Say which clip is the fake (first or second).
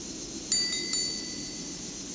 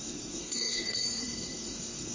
second